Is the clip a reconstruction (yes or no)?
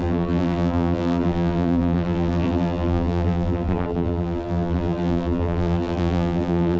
yes